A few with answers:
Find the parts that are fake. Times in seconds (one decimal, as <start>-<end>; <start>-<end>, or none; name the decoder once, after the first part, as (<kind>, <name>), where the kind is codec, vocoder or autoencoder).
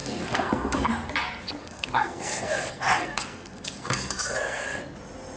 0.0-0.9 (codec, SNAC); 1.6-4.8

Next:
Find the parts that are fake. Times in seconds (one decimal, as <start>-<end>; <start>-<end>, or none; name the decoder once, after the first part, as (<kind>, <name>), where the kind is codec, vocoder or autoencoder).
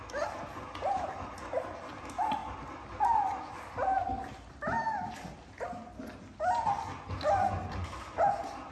none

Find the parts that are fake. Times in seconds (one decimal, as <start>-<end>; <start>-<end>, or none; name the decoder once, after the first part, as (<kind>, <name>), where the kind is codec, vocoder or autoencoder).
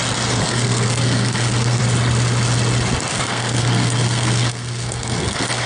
0.4-1.8 (codec, SNAC); 3.1-5.7